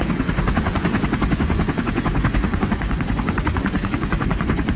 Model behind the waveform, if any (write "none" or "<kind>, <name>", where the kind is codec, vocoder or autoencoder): vocoder, Vocos